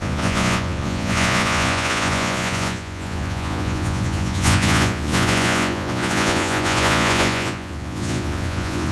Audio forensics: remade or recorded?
remade